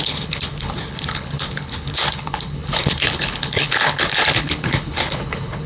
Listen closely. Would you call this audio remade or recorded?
remade